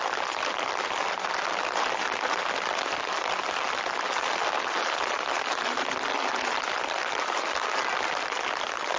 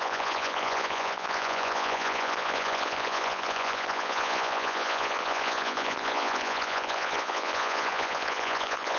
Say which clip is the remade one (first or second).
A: second